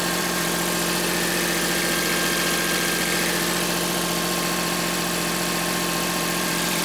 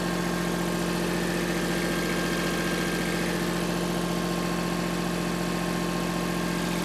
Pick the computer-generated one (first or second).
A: first